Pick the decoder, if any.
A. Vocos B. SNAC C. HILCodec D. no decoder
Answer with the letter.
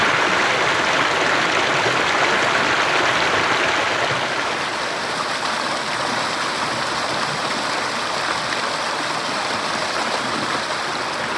D